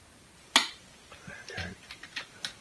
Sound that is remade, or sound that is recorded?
recorded